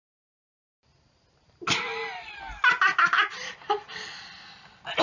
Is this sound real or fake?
real